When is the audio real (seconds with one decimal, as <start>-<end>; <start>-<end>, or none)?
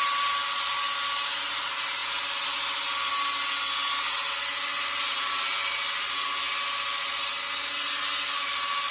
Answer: 0.0-8.9